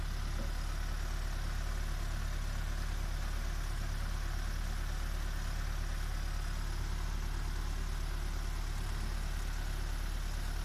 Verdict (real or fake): real